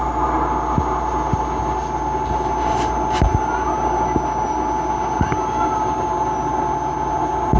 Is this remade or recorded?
recorded